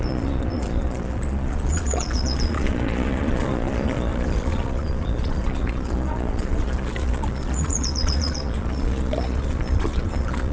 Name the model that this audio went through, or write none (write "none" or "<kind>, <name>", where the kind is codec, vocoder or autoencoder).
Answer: vocoder, Vocos